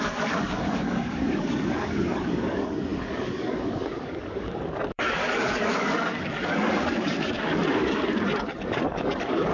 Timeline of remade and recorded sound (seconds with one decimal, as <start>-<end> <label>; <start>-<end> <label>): 0.0-9.5 remade